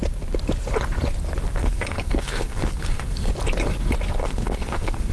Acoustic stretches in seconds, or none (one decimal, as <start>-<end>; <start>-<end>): 0.0-1.6; 3.3-4.2